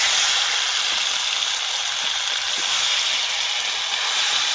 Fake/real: real